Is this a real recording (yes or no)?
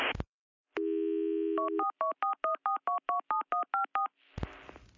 yes